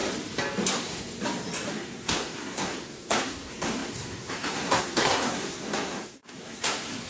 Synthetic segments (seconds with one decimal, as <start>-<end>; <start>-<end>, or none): 0.7-1.1; 1.7-7.1